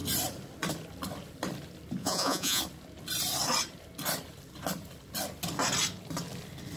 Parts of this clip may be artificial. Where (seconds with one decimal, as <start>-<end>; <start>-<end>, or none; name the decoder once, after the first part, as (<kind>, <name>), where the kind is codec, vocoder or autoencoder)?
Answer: 2.0-2.6 (vocoder, Vocos)